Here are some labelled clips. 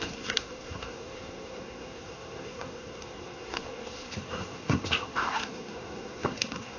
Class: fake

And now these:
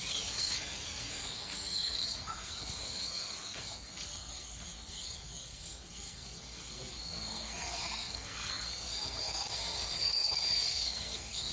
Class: fake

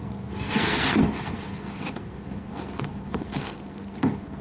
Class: fake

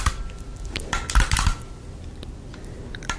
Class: real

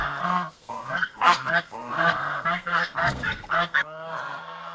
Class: fake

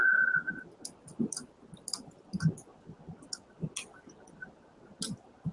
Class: real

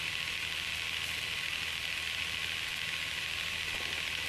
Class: real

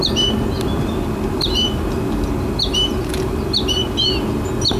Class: real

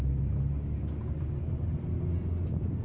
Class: real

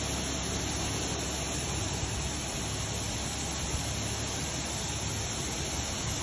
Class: real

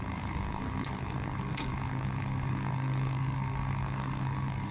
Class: fake